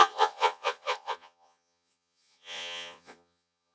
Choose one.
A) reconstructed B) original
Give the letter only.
A